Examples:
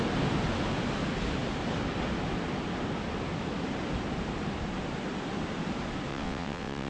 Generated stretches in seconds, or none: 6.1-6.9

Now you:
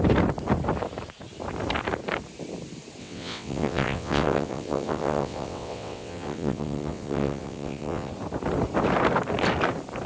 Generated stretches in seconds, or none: 3.0-8.1

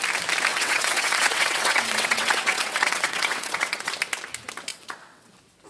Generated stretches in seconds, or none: 0.5-3.9; 4.7-5.3

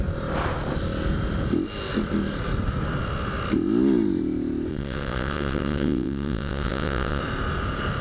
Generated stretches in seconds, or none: 4.7-7.2

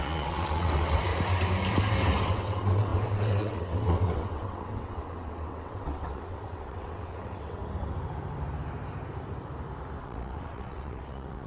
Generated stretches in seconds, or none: 0.0-1.1; 2.2-7.6; 10.0-11.5

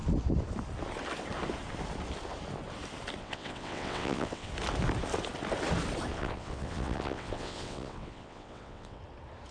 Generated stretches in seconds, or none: 3.2-4.5; 6.1-9.0